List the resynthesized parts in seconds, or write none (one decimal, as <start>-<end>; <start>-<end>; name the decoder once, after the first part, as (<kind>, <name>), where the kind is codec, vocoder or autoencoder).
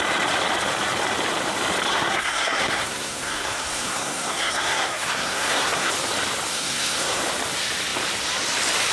1.9-5.9 (codec, SNAC); 6.5-7.2